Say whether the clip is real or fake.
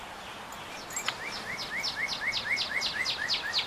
real